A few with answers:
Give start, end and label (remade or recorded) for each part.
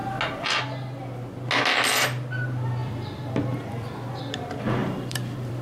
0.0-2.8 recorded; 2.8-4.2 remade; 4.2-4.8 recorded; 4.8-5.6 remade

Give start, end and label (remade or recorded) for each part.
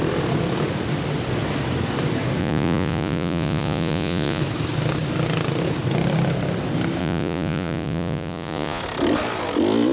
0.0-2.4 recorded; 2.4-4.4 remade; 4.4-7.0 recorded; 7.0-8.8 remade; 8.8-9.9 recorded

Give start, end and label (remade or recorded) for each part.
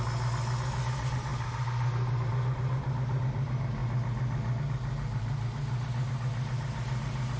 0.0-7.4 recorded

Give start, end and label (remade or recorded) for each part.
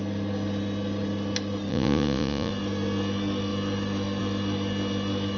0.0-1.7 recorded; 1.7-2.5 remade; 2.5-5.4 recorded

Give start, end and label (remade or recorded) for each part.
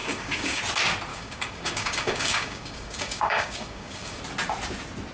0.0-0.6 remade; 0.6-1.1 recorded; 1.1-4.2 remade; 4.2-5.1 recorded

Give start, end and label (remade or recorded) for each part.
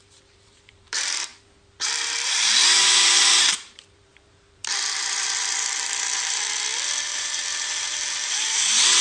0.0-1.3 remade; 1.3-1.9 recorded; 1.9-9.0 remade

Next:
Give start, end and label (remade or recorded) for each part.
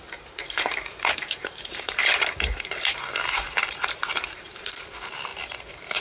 0.0-6.0 remade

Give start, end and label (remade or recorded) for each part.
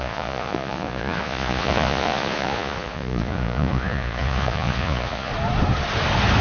0.0-5.3 remade; 5.3-6.4 recorded